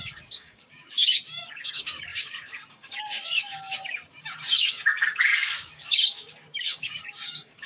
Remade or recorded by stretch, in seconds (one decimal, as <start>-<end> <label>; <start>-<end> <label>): 0.0-7.7 remade

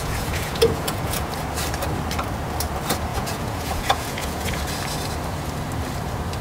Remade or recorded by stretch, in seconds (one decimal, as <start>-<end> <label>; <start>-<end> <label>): 0.0-1.3 remade; 1.3-3.1 recorded; 3.1-4.6 remade; 4.6-6.4 recorded

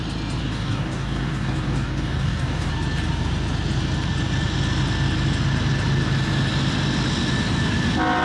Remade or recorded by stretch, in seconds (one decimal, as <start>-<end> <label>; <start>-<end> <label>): 0.0-0.4 recorded; 0.4-2.7 remade; 2.7-8.2 recorded

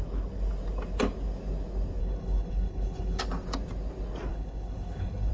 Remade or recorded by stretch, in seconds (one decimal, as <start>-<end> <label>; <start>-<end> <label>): 0.0-2.0 recorded; 2.0-3.2 remade; 3.2-4.3 recorded; 4.3-5.3 remade

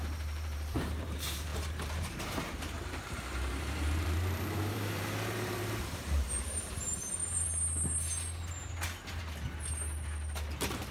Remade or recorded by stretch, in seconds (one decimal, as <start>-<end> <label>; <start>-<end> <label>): 0.0-7.2 remade; 7.2-10.9 recorded

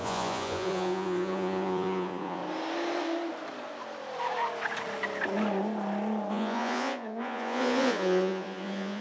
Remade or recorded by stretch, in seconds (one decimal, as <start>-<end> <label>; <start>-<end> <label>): 0.0-2.4 remade; 2.4-6.3 recorded; 6.3-9.0 remade